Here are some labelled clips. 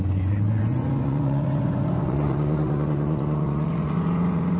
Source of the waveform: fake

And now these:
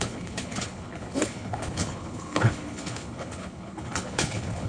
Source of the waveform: fake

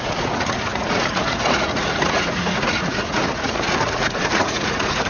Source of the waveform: fake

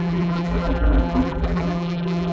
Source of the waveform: fake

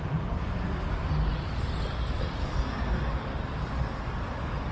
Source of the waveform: real